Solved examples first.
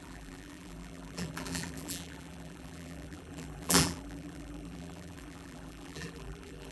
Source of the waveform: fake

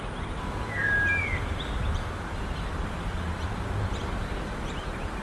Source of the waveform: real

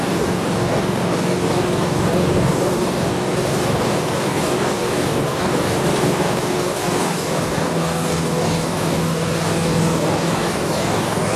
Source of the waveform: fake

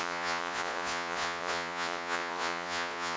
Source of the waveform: fake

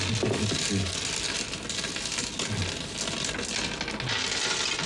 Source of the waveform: real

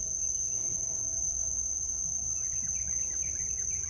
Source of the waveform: real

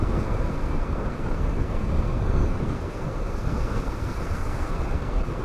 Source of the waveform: fake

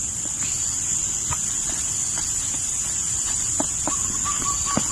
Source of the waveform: real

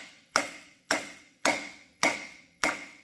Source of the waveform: fake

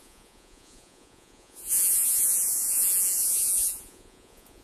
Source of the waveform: fake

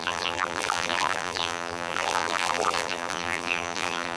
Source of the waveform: fake